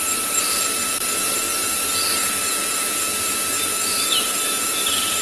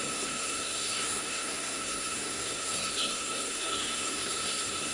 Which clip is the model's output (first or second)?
second